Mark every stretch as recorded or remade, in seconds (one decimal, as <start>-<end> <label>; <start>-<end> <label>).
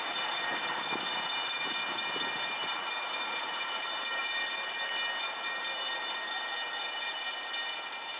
0.0-2.6 recorded; 2.6-4.2 remade; 4.2-8.2 recorded